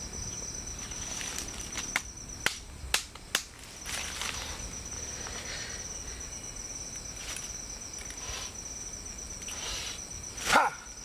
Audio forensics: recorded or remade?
recorded